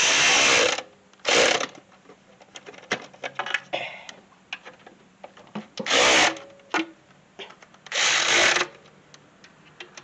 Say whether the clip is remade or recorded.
recorded